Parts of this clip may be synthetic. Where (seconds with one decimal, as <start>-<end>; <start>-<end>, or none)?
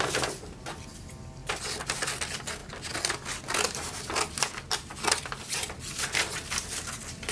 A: none